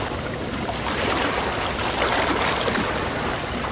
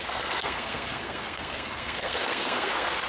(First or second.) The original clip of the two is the first